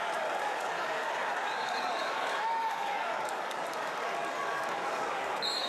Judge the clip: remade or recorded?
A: remade